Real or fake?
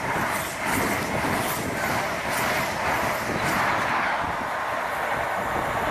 real